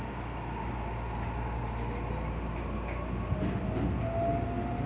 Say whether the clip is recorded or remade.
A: recorded